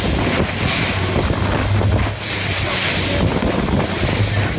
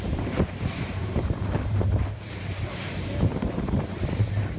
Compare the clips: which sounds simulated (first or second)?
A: second